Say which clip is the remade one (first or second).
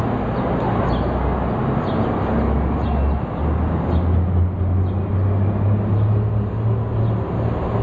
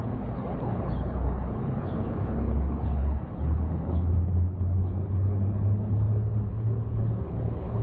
second